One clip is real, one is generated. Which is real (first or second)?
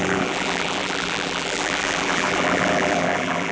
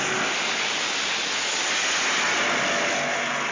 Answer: second